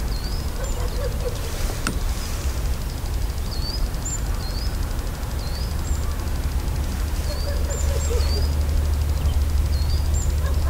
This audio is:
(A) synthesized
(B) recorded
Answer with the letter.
B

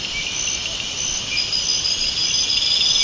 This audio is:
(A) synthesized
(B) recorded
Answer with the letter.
B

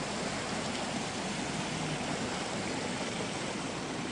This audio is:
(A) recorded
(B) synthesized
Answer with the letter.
A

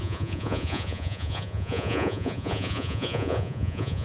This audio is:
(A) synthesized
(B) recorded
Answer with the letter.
A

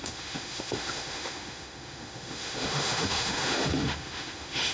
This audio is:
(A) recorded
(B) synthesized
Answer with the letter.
B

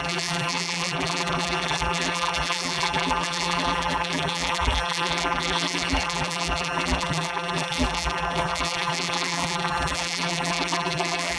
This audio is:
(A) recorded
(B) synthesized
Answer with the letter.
B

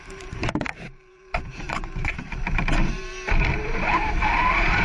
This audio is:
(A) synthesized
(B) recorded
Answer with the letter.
A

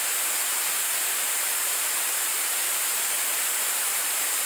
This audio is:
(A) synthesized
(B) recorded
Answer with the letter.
A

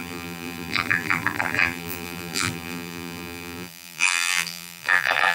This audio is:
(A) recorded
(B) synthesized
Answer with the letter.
B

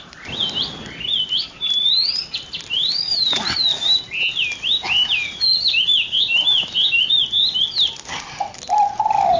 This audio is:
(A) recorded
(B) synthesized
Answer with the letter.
A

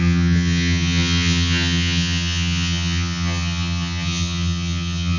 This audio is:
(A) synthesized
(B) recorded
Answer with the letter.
A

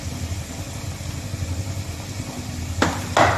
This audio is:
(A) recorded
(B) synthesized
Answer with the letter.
A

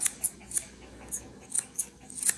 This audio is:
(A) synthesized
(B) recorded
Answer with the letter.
A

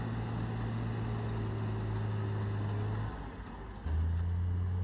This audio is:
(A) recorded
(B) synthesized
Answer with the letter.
A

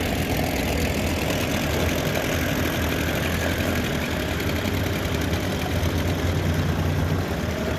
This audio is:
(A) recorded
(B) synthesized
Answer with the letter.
A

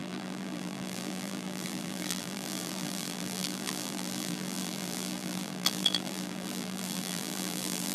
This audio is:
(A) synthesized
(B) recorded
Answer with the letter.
A